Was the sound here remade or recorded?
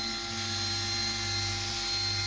recorded